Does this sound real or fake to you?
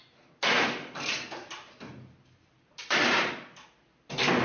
real